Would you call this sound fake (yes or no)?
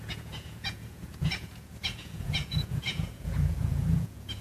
yes